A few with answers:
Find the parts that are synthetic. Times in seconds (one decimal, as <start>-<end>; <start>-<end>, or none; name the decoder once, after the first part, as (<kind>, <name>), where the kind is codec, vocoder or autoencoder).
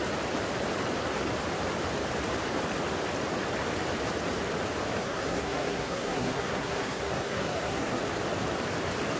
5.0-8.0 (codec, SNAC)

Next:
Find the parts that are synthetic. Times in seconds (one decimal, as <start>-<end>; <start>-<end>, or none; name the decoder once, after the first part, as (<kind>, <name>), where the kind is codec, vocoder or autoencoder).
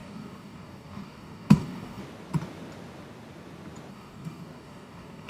0.0-2.0 (codec, DAC); 3.9-5.3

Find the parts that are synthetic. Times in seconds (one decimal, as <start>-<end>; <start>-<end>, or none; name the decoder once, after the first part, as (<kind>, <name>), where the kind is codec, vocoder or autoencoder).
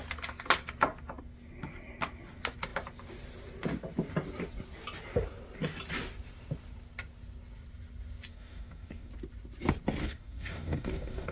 8.3-9.1 (codec, DAC); 10.0-11.3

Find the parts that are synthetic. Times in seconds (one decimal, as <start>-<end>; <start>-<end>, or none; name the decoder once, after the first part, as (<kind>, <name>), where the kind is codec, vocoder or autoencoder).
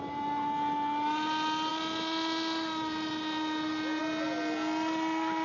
none